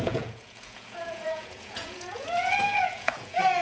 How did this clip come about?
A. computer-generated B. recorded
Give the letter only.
A